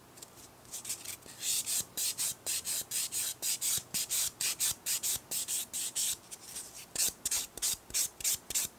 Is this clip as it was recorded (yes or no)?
no